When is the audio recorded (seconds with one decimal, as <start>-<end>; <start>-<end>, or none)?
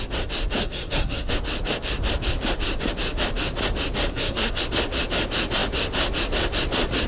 0.0-0.6; 1.3-4.1; 4.6-7.1